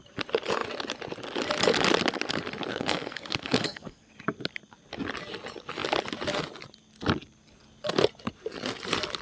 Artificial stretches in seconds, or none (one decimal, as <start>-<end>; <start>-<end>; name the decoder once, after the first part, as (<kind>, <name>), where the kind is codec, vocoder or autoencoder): 2.7-4.1 (codec, SNAC)